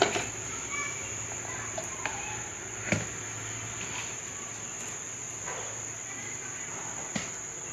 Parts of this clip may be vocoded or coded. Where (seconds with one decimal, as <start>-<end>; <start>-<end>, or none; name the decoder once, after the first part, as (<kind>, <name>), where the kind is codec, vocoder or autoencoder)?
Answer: none